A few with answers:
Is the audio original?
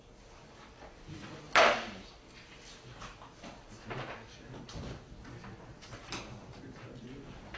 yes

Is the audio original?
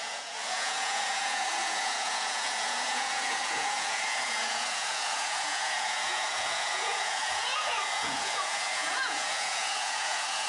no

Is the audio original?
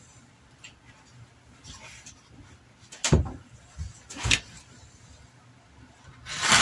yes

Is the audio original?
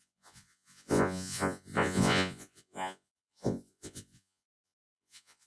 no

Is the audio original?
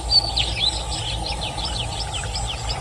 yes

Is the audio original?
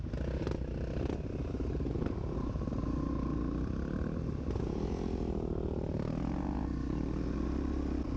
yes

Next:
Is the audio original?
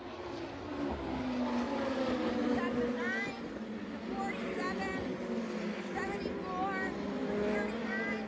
yes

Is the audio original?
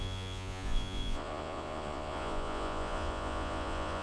no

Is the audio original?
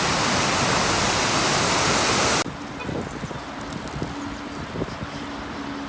yes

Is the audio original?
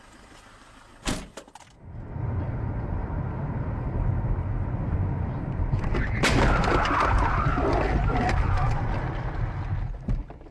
yes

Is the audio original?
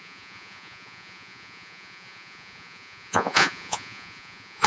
no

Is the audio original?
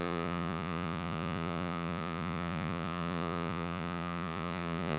no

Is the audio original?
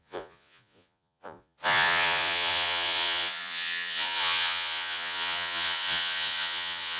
no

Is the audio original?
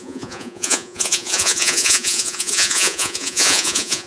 no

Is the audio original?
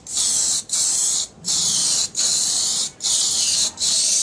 yes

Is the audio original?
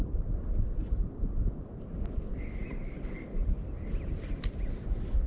yes